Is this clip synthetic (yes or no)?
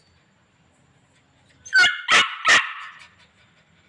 no